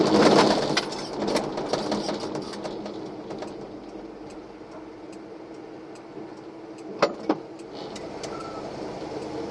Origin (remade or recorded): recorded